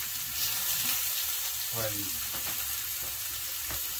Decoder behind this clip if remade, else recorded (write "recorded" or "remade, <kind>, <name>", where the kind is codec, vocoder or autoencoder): recorded